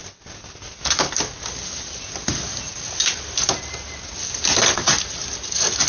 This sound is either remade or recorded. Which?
recorded